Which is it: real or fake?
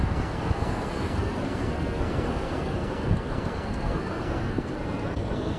fake